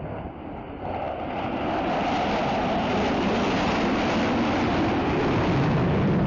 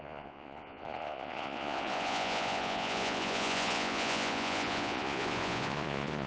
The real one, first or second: first